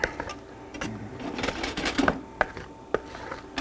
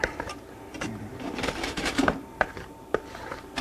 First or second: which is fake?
second